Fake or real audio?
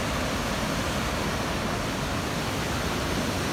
real